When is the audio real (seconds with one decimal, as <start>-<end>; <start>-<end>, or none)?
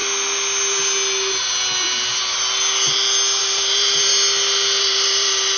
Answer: 0.0-3.4; 4.1-4.8